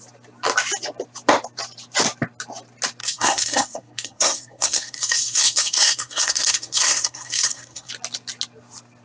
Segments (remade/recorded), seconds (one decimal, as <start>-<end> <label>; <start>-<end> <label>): 0.0-3.0 recorded; 3.0-7.9 remade; 7.9-9.0 recorded